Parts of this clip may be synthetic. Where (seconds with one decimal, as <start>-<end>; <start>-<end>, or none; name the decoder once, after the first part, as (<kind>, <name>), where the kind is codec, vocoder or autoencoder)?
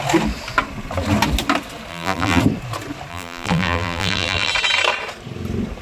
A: 1.9-2.4 (vocoder, BigVGAN v2); 3.1-4.5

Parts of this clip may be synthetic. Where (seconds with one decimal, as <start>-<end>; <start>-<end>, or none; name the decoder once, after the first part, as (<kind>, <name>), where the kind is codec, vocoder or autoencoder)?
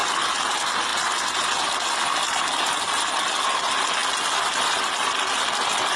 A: none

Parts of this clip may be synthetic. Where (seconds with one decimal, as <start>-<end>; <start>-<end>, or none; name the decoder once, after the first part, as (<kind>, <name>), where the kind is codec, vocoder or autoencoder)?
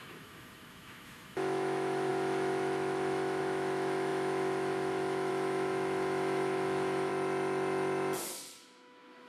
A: 0.0-7.1 (autoencoder, DAC-VAE); 8.6-9.3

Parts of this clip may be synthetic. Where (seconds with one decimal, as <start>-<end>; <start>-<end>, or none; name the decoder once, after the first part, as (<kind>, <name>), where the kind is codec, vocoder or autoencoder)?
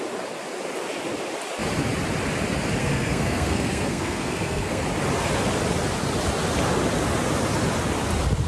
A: 2.8-4.8 (codec, SNAC)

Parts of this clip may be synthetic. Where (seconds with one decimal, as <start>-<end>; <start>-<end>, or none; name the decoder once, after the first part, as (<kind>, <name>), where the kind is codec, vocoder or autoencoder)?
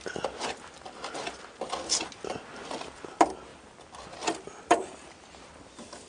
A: none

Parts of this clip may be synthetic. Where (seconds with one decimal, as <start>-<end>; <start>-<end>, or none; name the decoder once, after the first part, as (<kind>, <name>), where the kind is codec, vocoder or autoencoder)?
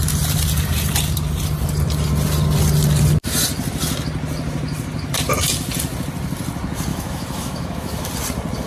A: 6.9-8.1 (autoencoder, DAC-VAE)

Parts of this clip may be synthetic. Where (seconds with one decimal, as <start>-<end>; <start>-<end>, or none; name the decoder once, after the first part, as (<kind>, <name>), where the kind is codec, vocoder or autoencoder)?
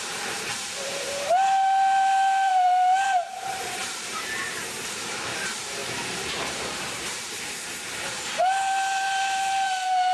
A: 0.0-5.8 (vocoder, BigVGAN v2); 6.3-10.1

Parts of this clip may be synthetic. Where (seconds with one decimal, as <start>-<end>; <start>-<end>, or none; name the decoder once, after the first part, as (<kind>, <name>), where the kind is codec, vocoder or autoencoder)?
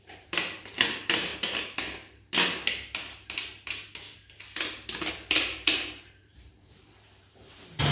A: 0.0-1.3 (vocoder, BigVGAN v2); 5.1-7.9